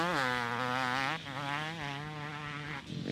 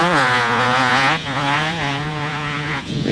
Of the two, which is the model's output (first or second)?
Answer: second